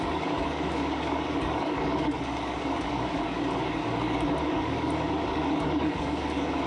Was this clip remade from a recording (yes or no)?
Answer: yes